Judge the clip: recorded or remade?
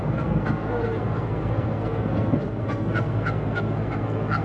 remade